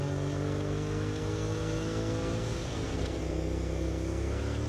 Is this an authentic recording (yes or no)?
no